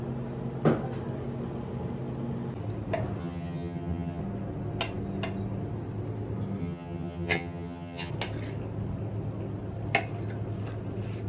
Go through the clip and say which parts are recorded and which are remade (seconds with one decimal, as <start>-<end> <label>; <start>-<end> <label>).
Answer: 0.0-3.2 recorded; 3.2-4.2 remade; 4.2-6.6 recorded; 6.6-8.1 remade; 8.1-11.3 recorded